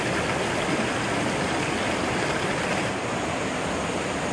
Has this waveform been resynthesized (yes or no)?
no